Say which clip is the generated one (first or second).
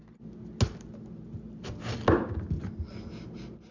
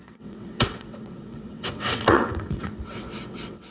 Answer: second